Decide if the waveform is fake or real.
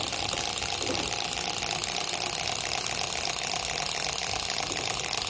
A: real